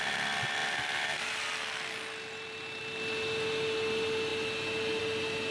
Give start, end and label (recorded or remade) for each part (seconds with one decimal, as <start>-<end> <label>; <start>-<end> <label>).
0.0-4.3 remade; 4.3-5.0 recorded; 5.0-5.5 remade